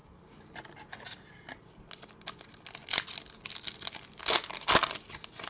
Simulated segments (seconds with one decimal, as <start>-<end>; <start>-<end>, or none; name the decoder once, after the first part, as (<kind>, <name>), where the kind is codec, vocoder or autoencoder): none